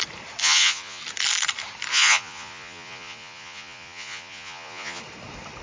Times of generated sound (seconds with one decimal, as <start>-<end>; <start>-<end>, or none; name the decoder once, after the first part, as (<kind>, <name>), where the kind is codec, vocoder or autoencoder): 0.4-1.0 (vocoder, Vocos); 1.9-5.0